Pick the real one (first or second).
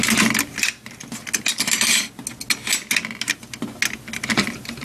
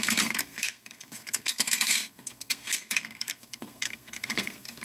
first